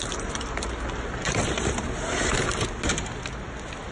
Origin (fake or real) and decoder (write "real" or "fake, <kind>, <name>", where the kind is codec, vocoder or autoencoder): real